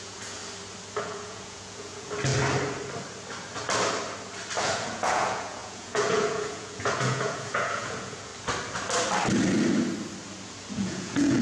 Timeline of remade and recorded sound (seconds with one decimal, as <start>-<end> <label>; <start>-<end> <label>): 0.0-0.4 remade; 0.4-1.0 recorded; 1.0-2.3 remade; 2.3-4.6 recorded; 4.6-8.3 remade; 8.3-10.7 recorded; 10.7-11.4 remade